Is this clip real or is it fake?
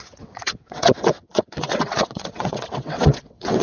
fake